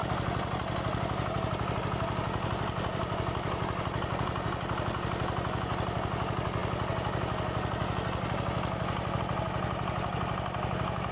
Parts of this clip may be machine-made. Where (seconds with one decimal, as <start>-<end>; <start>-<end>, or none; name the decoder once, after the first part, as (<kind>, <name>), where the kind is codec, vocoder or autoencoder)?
1.8-6.6 (vocoder, BigVGAN v2); 9.2-11.1